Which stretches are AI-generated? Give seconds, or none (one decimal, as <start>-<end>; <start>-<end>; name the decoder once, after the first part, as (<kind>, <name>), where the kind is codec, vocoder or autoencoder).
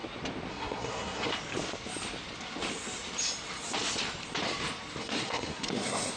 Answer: 0.5-1.3 (codec, SNAC); 5.0-6.2